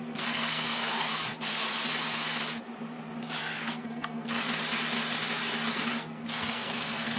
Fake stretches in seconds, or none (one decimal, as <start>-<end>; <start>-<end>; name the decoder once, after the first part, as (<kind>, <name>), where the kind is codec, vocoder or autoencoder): 0.0-1.1 (codec, SNAC); 3.4-4.4; 5.7-7.2